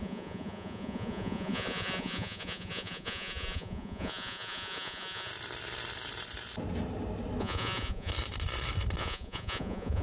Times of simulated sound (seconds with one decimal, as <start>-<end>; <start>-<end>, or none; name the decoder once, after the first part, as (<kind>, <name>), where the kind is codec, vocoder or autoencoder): 0.0-5.3 (vocoder, Vocos); 7.4-8.1; 9.0-10.0